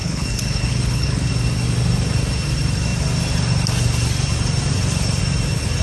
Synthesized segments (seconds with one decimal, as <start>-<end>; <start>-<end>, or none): 0.0-1.3